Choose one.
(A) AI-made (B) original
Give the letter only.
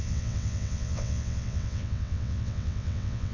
A